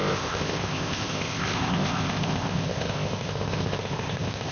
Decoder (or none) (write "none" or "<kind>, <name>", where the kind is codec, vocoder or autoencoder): codec, ZipCodec